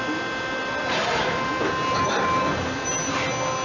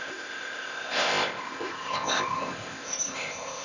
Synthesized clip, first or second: second